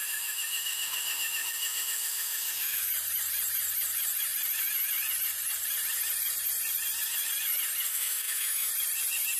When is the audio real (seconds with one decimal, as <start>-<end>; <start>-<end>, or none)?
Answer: 2.9-7.9; 8.7-9.4

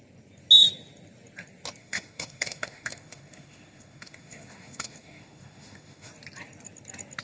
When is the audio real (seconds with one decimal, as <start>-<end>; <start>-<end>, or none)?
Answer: 0.0-1.8; 6.1-7.2